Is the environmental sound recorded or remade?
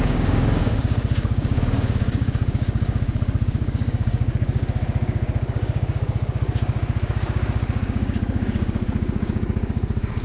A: remade